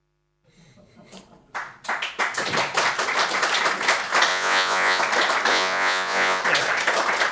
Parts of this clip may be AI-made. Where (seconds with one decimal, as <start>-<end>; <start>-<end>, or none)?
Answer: 4.3-5.0; 5.5-6.4